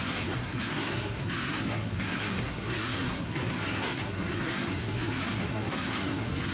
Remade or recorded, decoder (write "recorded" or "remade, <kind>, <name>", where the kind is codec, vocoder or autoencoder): remade, codec, SNAC